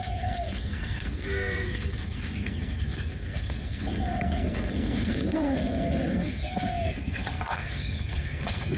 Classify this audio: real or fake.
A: fake